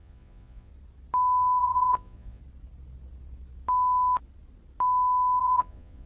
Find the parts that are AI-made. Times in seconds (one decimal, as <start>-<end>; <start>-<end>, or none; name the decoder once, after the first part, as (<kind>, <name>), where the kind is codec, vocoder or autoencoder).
0.0-0.7 (vocoder, Vocos); 1.6-2.4; 5.4-6.1